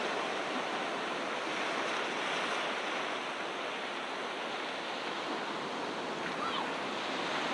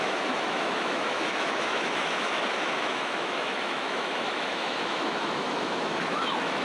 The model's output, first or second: second